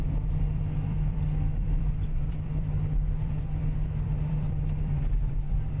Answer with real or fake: fake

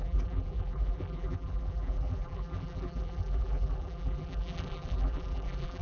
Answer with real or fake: fake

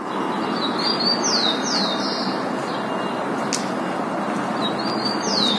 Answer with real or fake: real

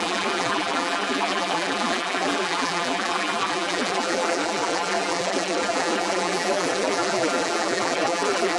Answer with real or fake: fake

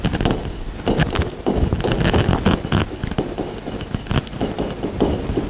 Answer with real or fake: real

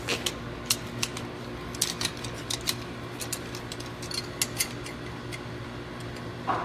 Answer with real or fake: real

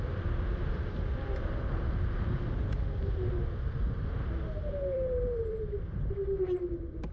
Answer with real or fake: fake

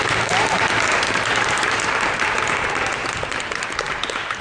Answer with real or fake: fake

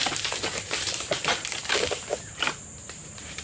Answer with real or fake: fake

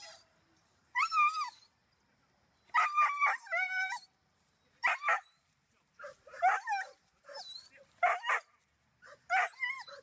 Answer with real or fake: real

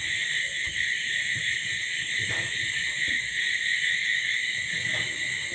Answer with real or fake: real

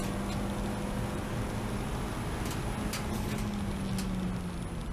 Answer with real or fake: real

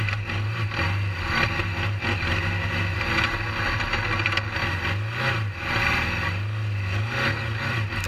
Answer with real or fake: real